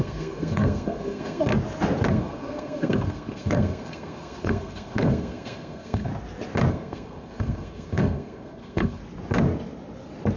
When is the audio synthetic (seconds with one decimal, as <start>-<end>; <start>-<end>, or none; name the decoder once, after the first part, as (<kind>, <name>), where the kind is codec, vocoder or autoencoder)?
0.0-1.5 (codec, SNAC); 2.1-6.1; 6.7-9.0